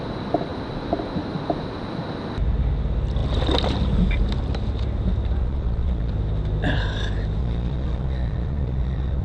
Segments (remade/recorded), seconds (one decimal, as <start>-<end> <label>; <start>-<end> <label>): 0.0-5.4 recorded; 5.4-6.1 remade; 6.1-7.4 recorded; 7.4-9.2 remade